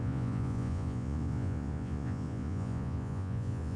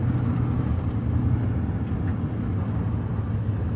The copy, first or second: first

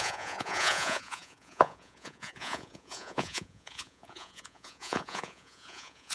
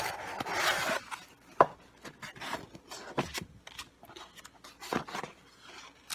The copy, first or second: first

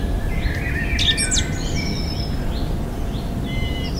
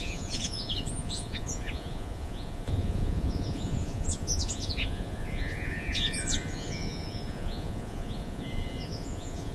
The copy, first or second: second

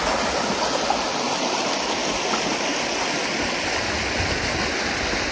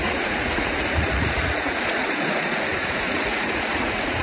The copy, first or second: second